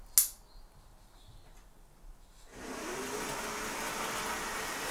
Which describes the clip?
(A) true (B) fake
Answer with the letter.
A